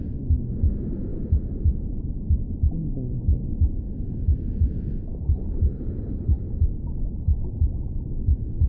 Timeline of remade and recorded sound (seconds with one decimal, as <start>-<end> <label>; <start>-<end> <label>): 0.0-5.1 recorded; 5.1-6.4 remade; 6.4-8.7 recorded